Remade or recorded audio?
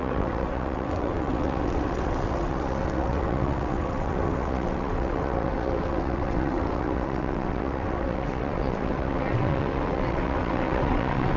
remade